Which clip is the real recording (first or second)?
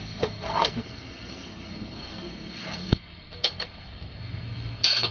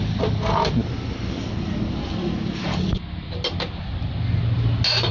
second